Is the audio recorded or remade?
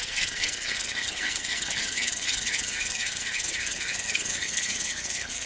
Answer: remade